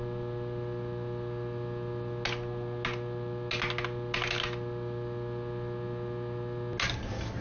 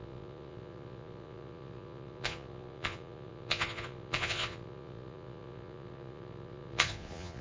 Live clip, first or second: first